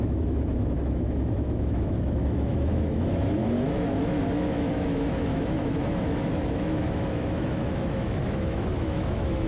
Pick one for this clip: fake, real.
fake